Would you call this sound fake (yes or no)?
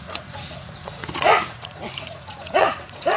yes